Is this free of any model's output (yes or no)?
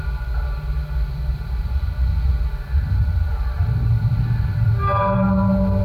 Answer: yes